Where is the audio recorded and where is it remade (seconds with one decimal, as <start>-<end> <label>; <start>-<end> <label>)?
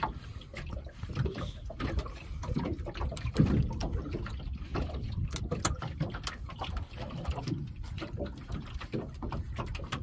0.0-10.0 recorded